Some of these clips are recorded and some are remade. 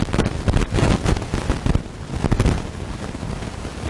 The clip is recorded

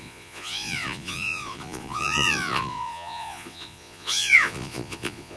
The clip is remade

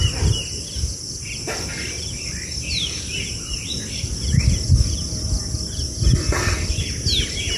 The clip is recorded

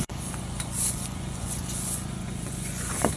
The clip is remade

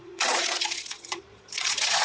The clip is remade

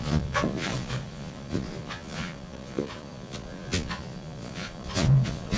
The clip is remade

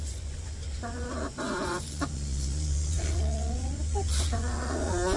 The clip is remade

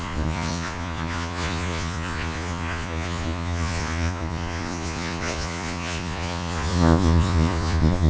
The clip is remade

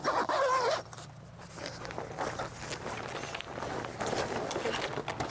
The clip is recorded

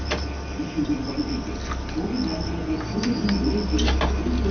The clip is recorded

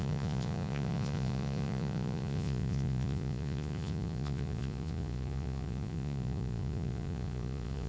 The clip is remade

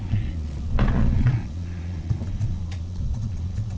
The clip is remade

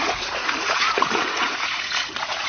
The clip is remade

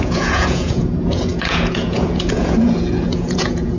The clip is remade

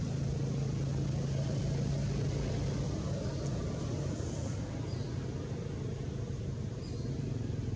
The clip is recorded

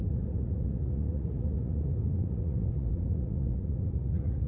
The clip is remade